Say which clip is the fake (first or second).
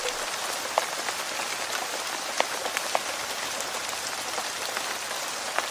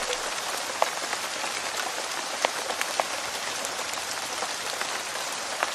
second